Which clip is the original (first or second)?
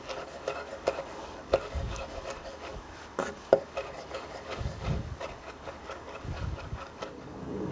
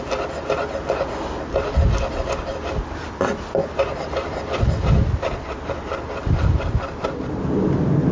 second